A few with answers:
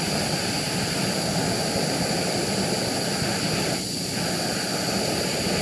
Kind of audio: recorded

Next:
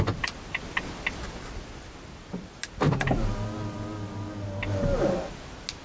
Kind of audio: recorded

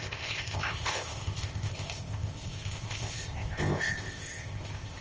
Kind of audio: remade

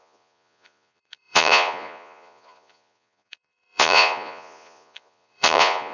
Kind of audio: remade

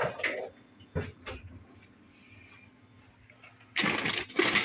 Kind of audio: recorded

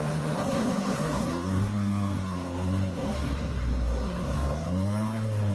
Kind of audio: remade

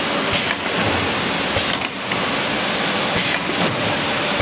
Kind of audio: recorded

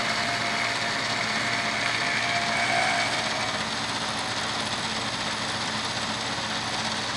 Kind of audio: recorded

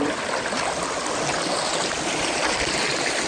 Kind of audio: recorded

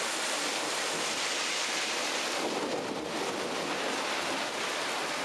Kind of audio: remade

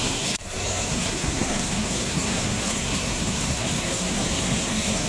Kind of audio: remade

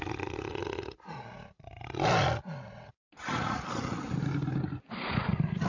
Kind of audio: recorded